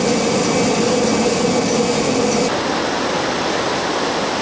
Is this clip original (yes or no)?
yes